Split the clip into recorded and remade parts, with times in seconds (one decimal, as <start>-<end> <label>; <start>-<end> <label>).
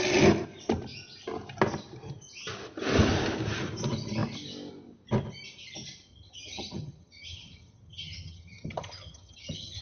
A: 0.0-6.1 recorded; 6.1-9.8 remade